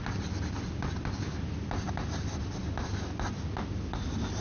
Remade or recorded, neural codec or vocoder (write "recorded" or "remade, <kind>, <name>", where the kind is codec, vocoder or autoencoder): recorded